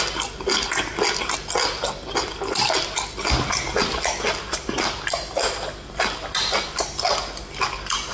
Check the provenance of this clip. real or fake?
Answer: real